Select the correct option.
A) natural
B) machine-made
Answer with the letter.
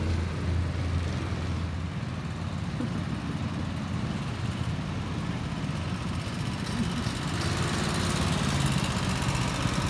A